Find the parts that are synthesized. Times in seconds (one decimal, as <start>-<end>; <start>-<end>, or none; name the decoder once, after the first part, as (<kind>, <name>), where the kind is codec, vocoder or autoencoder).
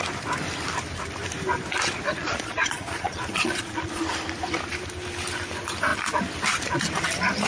2.2-4.0 (vocoder, Vocos)